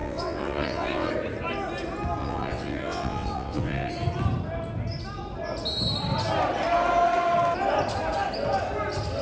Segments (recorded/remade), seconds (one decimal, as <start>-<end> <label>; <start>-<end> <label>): 0.0-1.1 remade; 1.1-2.2 recorded; 2.2-3.9 remade; 3.9-9.2 recorded